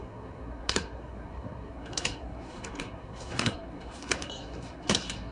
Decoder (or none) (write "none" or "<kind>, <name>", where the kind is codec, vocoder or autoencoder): codec, SNAC